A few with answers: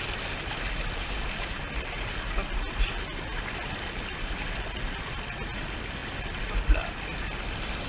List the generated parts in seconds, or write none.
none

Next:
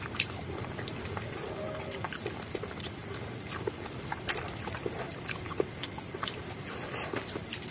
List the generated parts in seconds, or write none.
none

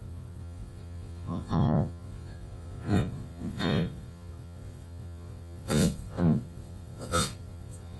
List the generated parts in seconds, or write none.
0.0-8.0 (vocoder, Vocos)